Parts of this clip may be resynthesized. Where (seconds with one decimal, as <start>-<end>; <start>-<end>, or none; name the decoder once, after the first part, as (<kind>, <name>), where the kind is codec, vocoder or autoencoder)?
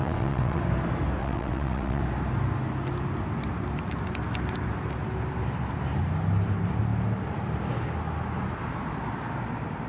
0.0-0.6 (vocoder, WaveNeXt); 1.2-2.0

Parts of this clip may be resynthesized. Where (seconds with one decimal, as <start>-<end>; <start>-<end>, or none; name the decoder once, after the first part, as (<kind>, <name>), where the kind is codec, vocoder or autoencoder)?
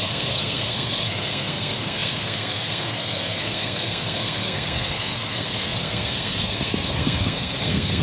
0.0-8.0 (codec, SNAC)